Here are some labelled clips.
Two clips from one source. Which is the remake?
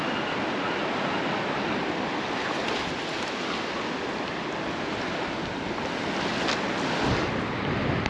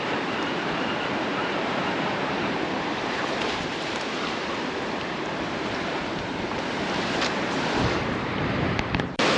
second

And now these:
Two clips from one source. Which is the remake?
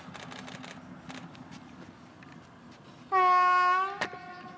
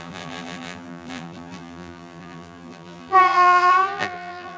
second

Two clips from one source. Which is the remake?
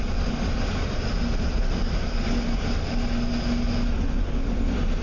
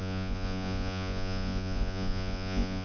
second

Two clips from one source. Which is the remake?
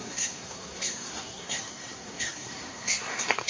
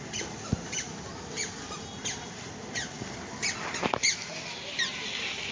first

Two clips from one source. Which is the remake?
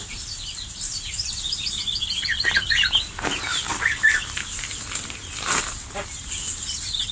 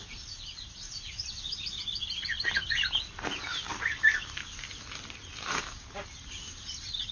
second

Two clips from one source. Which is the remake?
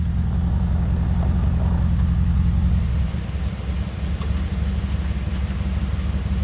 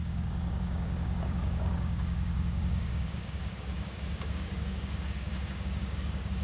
second